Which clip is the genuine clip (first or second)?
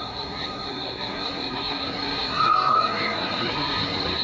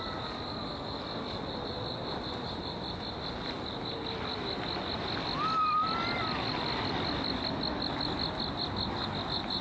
second